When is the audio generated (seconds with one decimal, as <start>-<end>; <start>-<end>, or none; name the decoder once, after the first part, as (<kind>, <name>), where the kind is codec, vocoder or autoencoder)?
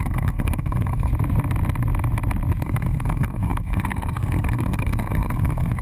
0.0-1.1 (codec, SNAC); 2.6-5.8